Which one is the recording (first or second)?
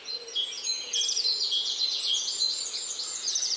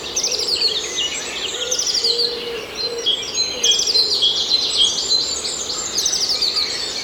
second